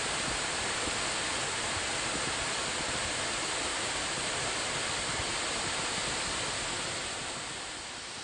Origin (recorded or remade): recorded